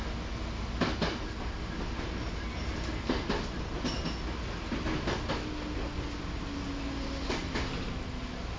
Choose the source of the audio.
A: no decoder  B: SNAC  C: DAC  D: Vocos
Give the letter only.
A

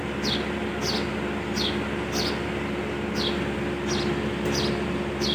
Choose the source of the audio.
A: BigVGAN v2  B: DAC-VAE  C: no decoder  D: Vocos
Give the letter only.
C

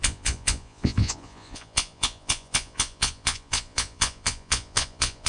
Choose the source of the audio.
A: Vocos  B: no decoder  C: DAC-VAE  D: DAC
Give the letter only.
A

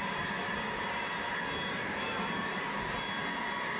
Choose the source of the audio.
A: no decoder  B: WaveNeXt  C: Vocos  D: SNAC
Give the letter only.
A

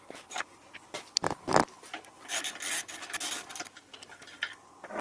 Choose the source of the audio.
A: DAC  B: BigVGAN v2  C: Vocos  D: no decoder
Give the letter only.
D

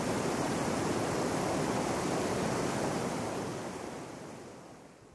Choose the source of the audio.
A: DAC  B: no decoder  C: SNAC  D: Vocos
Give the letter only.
B